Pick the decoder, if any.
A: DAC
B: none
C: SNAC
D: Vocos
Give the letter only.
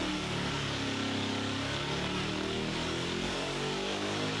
A